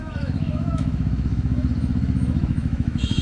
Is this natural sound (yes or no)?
no